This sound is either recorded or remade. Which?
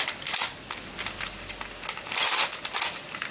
recorded